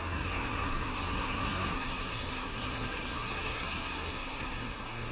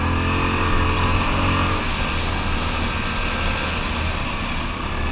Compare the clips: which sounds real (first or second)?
second